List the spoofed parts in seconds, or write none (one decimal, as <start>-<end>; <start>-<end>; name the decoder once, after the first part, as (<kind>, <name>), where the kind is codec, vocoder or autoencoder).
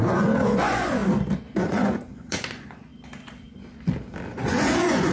0.0-1.0 (vocoder, Vocos); 1.6-2.9; 4.3-5.1